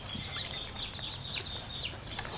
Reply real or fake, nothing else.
real